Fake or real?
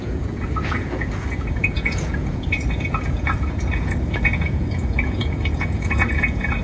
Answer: fake